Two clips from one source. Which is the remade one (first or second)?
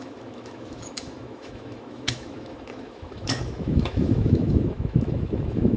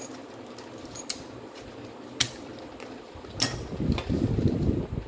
first